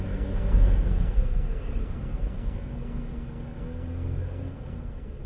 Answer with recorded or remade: remade